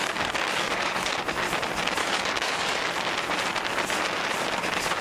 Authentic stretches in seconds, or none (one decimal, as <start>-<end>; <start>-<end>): 1.1-2.0; 2.8-5.0